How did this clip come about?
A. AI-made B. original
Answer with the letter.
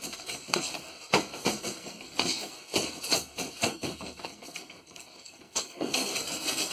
A